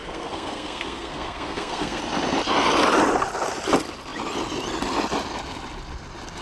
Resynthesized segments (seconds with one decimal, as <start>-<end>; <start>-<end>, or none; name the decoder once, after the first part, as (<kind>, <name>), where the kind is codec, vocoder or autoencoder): 0.0-2.0 (codec, SNAC)